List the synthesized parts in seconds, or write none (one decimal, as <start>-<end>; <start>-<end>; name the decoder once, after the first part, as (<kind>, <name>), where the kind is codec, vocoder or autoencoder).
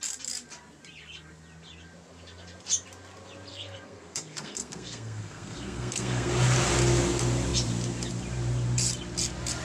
3.5-6.3 (codec, SNAC)